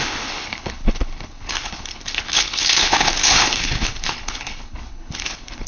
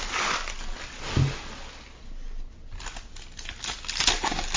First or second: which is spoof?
first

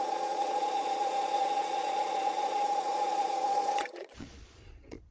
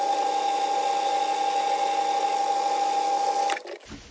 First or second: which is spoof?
first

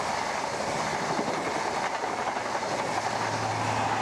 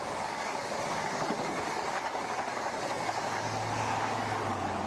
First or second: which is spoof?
second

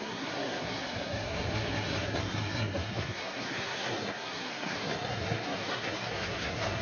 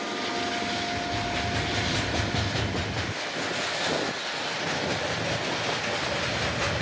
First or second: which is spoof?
first